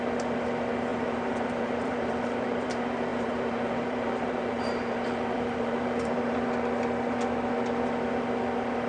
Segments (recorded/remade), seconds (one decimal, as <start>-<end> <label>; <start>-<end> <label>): 0.0-0.9 recorded; 0.9-2.7 remade; 2.7-3.1 recorded; 3.1-6.3 remade; 6.3-8.9 recorded